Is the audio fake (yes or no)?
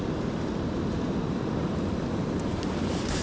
no